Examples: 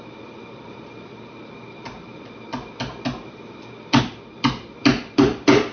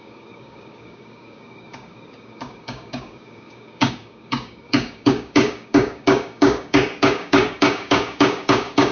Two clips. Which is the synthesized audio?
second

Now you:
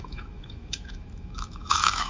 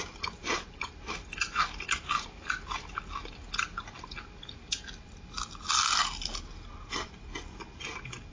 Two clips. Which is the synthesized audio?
first